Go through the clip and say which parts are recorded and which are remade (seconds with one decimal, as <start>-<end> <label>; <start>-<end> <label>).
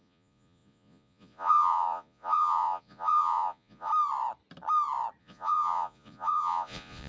0.0-3.9 remade; 3.9-5.2 recorded; 5.2-7.1 remade